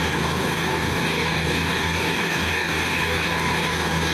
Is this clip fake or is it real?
fake